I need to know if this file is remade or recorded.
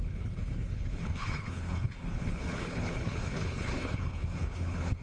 remade